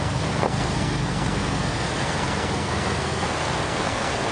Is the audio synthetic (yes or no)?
yes